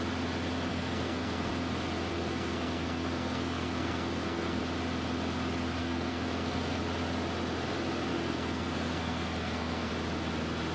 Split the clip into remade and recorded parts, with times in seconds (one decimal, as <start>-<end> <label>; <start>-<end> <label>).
0.0-0.7 recorded; 0.7-1.5 remade; 1.5-2.1 recorded; 2.1-4.6 remade; 4.6-5.8 recorded; 5.8-6.8 remade; 6.8-8.1 recorded; 8.1-9.9 remade; 9.9-10.7 recorded